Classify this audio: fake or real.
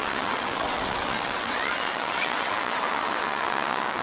fake